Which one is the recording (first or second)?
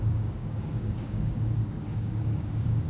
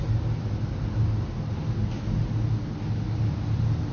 second